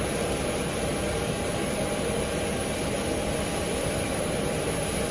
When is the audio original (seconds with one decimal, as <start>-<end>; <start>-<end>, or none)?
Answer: 0.0-5.1